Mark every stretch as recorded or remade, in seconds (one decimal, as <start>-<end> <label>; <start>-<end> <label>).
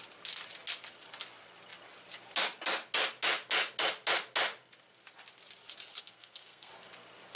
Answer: 0.0-6.0 recorded; 6.0-6.7 remade; 6.7-7.4 recorded